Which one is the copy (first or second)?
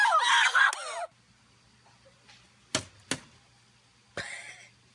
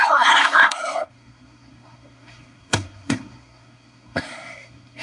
second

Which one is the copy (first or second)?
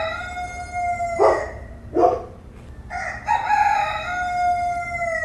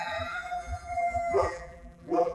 second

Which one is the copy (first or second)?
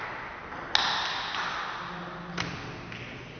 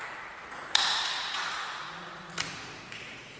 second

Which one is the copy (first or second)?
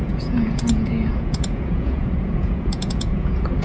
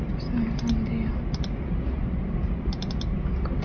first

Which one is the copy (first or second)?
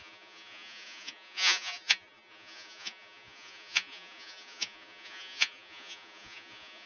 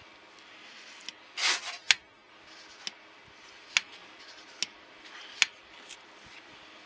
first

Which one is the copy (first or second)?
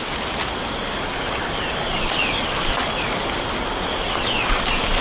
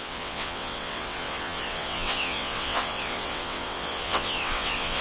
second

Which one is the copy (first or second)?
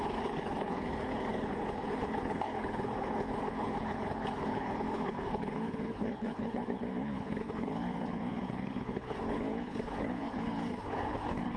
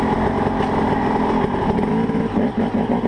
first